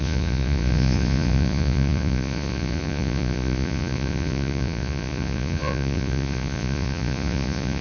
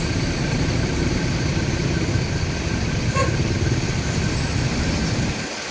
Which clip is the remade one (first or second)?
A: first